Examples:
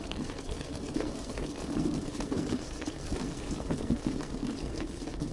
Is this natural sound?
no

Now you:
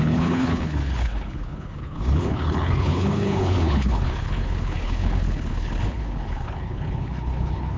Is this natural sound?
no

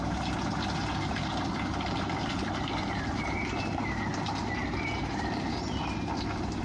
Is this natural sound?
no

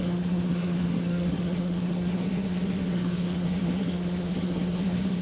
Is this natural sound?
no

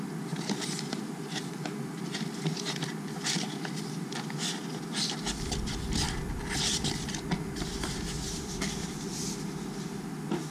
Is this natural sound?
yes